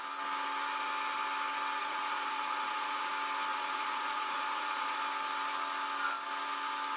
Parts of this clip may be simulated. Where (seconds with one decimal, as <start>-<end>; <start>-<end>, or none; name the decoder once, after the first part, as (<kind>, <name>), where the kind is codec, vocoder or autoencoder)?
1.8-3.1 (vocoder, Vocos); 3.5-5.0